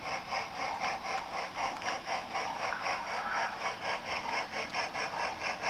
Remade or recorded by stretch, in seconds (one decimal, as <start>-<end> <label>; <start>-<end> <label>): 0.0-1.3 recorded; 1.3-4.7 remade; 4.7-5.7 recorded